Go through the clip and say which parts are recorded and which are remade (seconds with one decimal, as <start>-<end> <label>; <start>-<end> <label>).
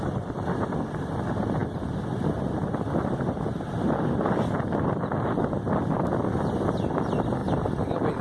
0.0-8.2 recorded